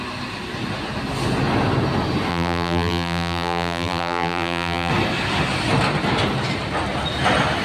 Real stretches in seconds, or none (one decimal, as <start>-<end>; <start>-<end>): 0.0-2.3; 4.9-7.6